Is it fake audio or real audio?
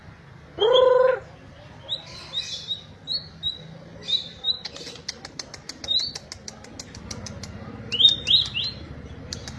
real